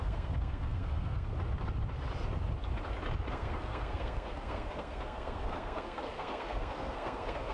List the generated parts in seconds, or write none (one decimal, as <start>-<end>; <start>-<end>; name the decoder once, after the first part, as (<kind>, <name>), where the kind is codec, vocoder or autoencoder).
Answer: 0.0-1.3 (codec, SNAC); 3.3-7.5